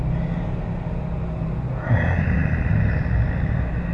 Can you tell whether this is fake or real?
real